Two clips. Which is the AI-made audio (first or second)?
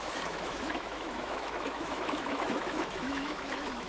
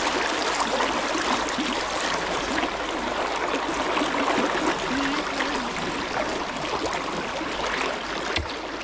first